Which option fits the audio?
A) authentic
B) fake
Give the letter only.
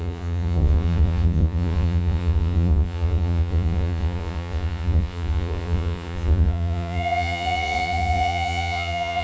B